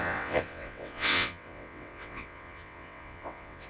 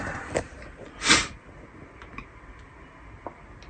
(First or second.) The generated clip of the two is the first